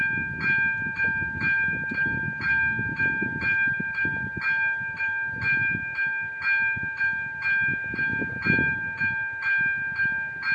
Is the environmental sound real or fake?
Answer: real